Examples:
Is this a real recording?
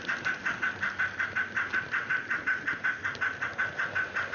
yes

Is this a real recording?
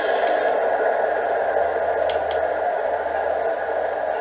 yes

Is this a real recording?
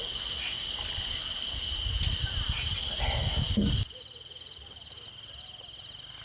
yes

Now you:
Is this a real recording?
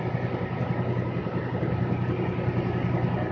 yes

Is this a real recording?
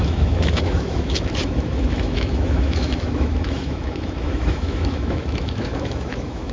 no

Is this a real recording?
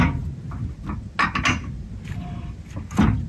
yes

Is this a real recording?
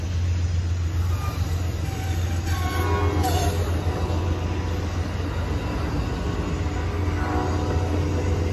yes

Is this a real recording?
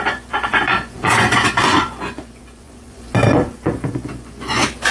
no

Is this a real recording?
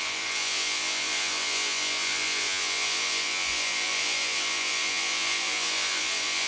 no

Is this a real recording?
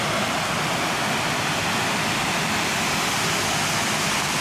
yes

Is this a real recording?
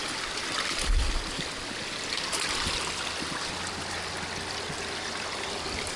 yes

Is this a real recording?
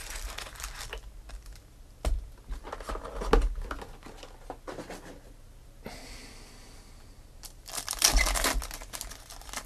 yes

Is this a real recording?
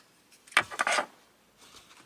yes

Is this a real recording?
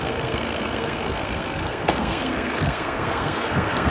no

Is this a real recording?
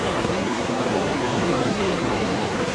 no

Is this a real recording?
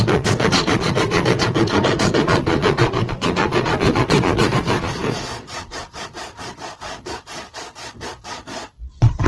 no